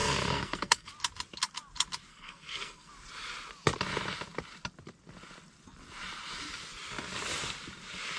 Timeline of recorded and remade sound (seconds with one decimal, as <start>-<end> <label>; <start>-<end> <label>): 0.0-0.9 remade; 0.9-2.1 recorded; 2.1-2.9 remade; 2.9-8.2 recorded